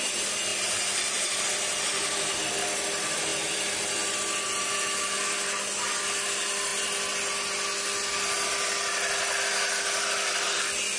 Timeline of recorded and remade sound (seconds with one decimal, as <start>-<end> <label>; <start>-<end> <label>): 0.0-11.0 recorded